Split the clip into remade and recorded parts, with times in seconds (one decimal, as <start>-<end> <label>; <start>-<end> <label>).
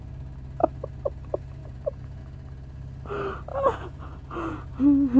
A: 0.0-1.6 recorded; 1.6-2.2 remade; 2.2-3.5 recorded; 3.5-4.8 remade; 4.8-5.2 recorded